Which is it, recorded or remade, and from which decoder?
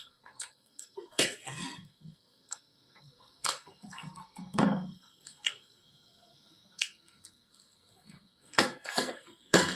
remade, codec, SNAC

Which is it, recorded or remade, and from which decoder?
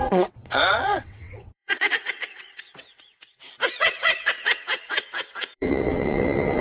remade, vocoder, WaveNeXt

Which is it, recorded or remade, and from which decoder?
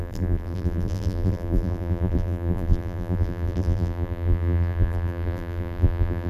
remade, vocoder, BigVGAN v2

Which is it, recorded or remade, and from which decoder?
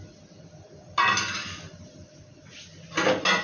recorded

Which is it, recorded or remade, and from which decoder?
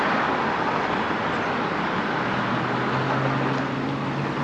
recorded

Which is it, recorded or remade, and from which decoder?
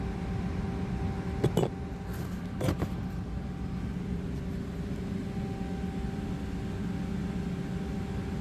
recorded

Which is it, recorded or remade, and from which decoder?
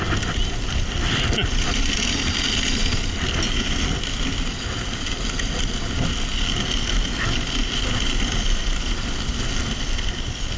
recorded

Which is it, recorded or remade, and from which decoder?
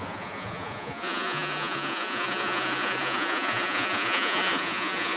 remade, vocoder, Vocos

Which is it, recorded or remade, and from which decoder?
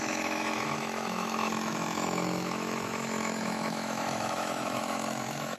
remade, autoencoder, DAC-VAE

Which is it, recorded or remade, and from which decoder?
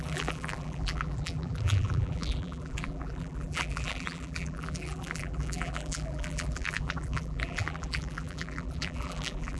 remade, vocoder, BigVGAN v2